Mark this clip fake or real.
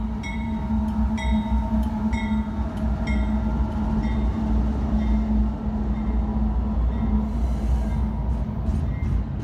real